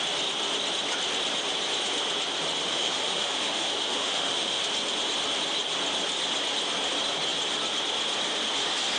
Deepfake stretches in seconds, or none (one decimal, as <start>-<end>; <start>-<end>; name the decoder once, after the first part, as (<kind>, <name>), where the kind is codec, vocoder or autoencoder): 2.7-4.6 (autoencoder, DAC-VAE)